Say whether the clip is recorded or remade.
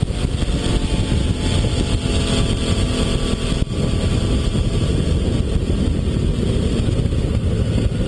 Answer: recorded